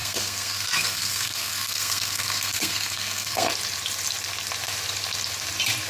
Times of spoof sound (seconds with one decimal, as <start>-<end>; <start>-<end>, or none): 0.0-3.5